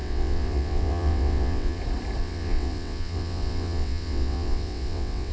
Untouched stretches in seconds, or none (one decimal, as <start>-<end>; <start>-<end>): 1.8-2.2